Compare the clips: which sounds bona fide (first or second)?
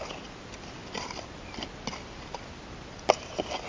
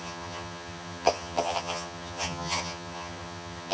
first